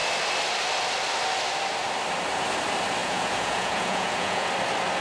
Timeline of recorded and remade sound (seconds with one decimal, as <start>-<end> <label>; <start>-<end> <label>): 0.0-3.0 recorded; 3.0-4.5 remade; 4.5-5.0 recorded